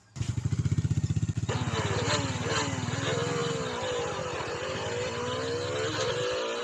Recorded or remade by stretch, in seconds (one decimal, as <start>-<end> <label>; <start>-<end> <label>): 0.0-6.6 recorded